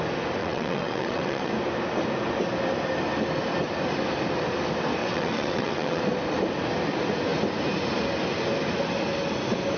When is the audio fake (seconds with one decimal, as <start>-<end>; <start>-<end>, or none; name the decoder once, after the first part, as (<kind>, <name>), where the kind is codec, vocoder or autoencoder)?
0.4-1.5 (vocoder, WaveNeXt); 5.0-6.0

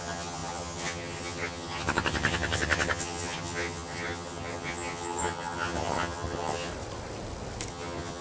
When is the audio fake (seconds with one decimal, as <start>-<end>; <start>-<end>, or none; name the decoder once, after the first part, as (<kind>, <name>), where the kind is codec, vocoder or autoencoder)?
0.0-6.7 (vocoder, HiFi-GAN); 7.7-8.2

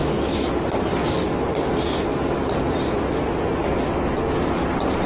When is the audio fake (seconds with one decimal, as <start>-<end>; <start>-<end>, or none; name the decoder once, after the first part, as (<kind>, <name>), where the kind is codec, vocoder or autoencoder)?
0.0-0.5 (autoencoder, DAC-VAE)

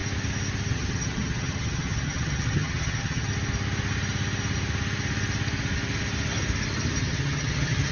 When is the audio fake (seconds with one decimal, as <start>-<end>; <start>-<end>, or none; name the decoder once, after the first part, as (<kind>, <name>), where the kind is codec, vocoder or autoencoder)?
0.7-3.3 (vocoder, HiFi-GAN); 7.0-7.9